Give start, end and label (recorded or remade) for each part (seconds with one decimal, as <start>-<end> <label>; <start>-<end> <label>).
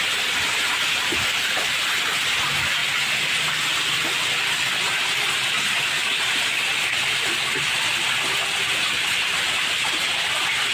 0.0-10.7 recorded